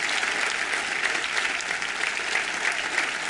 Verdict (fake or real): real